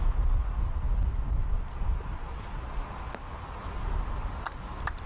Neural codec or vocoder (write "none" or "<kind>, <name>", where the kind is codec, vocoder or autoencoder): none